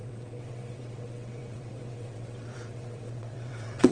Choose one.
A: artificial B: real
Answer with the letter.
A